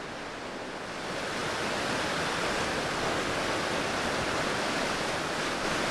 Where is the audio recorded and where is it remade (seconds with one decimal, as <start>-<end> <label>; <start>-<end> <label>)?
0.0-5.9 recorded